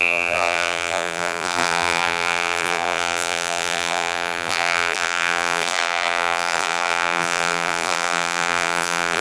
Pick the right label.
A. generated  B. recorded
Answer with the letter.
A